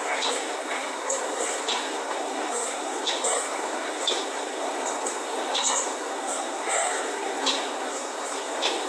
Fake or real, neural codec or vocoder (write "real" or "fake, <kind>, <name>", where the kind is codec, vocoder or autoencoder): fake, codec, SNAC